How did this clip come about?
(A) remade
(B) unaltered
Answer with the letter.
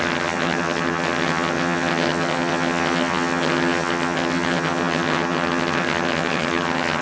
A